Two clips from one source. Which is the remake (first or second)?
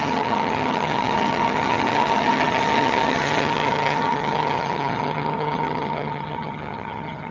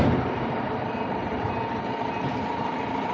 first